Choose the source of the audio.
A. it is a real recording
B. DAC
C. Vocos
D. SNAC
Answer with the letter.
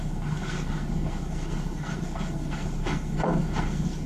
D